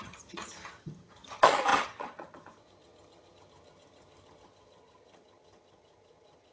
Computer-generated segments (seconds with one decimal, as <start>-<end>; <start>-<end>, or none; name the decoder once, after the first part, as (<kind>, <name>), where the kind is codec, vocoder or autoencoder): 0.0-6.5 (vocoder, HiFi-GAN)